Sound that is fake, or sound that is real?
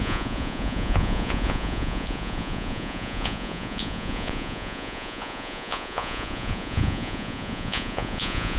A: fake